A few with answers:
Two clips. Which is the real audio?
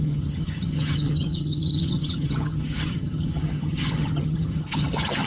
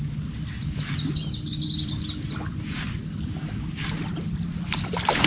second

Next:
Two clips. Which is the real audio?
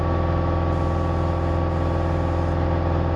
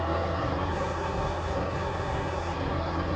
first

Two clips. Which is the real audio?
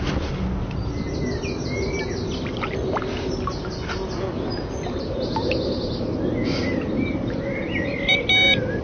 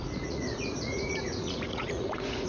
first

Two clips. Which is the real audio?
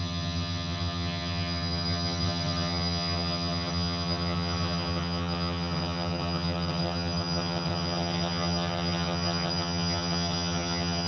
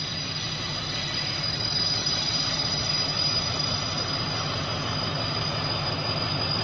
second